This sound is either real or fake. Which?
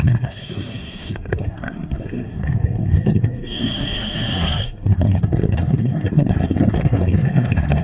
fake